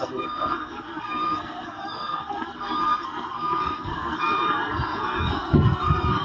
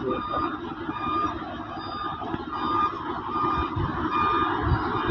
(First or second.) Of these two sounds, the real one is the second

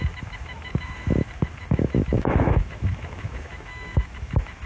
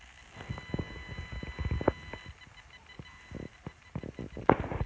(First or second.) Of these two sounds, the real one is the second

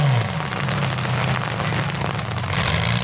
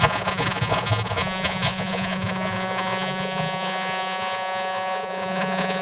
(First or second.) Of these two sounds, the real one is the first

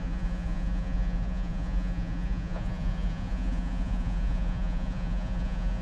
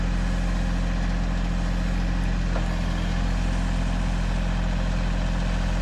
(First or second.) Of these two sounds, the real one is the second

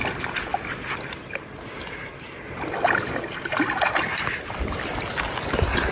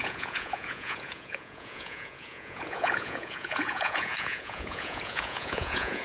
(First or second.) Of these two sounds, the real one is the first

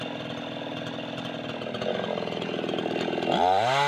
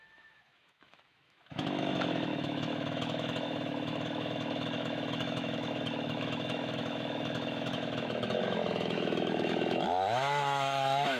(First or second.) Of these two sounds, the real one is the first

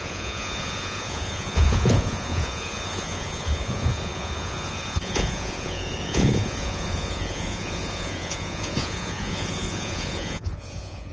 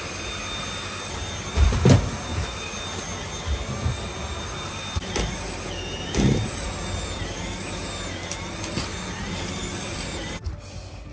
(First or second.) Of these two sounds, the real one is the second